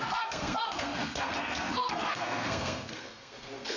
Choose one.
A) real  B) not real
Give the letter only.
B